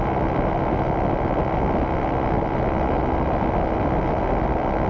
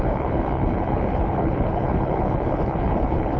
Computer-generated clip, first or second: second